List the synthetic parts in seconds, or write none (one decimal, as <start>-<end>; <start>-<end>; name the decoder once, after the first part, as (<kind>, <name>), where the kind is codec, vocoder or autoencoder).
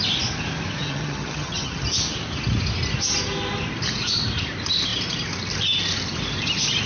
0.8-1.8 (vocoder, HiFi-GAN)